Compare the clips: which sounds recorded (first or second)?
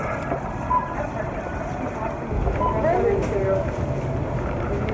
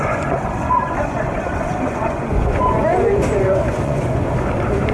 first